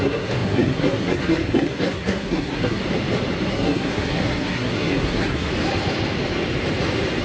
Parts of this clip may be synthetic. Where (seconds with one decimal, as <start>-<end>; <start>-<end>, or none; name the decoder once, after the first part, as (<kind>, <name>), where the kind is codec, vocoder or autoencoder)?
0.0-2.8 (codec, SNAC); 3.5-5.5